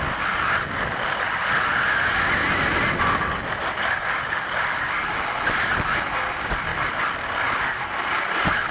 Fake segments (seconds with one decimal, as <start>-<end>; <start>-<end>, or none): none